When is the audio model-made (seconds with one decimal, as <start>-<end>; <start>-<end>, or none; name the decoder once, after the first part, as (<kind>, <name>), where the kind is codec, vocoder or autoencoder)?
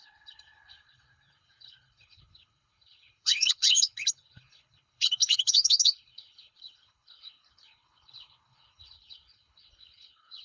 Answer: 0.0-10.4 (codec, HILCodec)